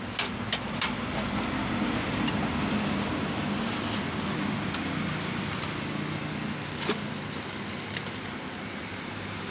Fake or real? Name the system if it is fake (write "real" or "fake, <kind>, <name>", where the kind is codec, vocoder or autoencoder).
real